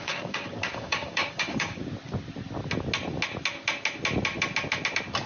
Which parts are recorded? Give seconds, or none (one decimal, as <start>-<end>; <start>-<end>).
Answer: 1.8-5.3